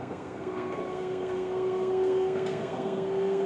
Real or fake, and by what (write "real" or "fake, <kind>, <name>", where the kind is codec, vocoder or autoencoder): fake, codec, SNAC